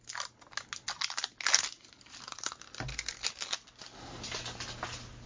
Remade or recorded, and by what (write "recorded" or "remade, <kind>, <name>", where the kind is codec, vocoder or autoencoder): recorded